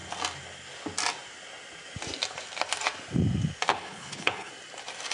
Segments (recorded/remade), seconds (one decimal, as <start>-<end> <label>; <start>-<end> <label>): 0.0-3.7 recorded; 3.7-4.5 remade; 4.5-5.1 recorded